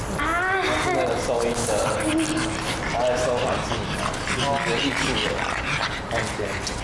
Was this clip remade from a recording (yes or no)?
no